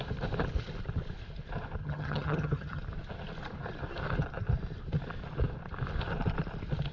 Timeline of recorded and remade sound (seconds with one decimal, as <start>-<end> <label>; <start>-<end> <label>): 0.0-1.8 recorded; 1.8-2.8 remade; 2.8-6.9 recorded